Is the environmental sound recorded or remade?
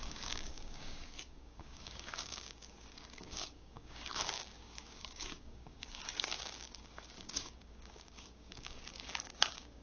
remade